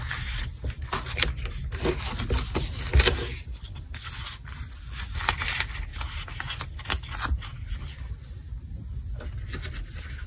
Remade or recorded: recorded